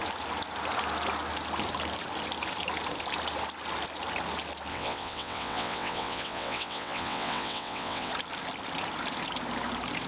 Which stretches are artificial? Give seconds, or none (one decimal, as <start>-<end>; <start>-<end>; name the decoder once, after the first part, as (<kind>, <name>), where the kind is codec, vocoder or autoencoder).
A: 4.7-8.1 (vocoder, WaveNeXt)